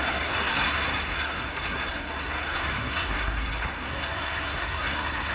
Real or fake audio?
fake